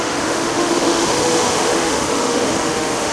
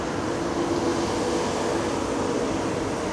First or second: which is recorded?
second